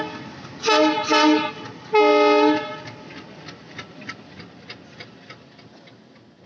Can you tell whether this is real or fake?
real